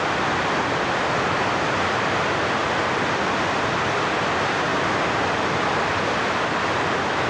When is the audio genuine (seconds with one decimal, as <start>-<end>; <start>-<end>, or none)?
0.0-7.3